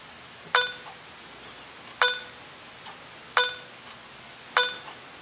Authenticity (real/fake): real